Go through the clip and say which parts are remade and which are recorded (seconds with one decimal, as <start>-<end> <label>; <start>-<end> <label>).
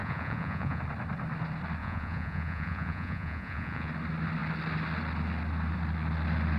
0.0-0.8 remade; 0.8-1.8 recorded; 1.8-3.9 remade; 3.9-6.6 recorded